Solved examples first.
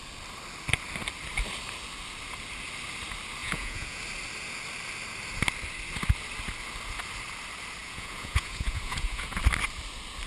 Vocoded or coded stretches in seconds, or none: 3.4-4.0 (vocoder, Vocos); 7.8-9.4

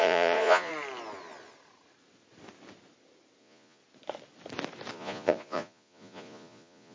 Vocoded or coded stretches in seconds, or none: 0.0-0.7 (vocoder, Vocos); 3.4-3.8; 4.9-6.9

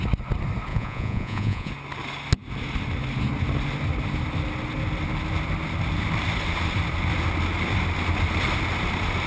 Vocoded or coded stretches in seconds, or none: 0.7-1.7 (vocoder, Vocos)

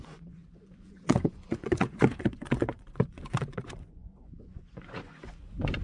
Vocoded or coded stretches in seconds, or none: 0.0-5.8 (vocoder, Vocos)

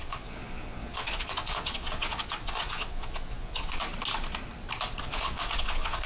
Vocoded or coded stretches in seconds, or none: 0.0-3.9 (vocoder, Vocos); 5.0-6.1

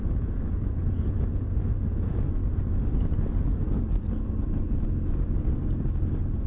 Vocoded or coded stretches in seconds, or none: 0.0-2.4 (vocoder, Vocos)